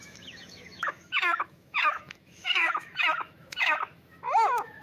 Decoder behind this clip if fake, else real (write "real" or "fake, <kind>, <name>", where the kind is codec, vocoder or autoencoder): fake, autoencoder, DAC-VAE